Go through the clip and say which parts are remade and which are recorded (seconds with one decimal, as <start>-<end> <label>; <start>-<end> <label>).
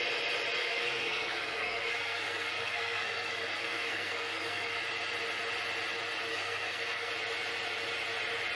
0.0-0.6 recorded; 0.6-4.8 remade; 4.8-6.3 recorded; 6.3-7.1 remade; 7.1-8.5 recorded